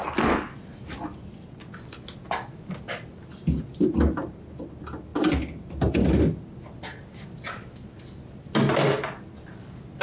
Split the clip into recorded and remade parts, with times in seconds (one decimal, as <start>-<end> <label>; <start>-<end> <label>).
0.0-5.1 recorded; 5.1-5.8 remade; 5.8-10.0 recorded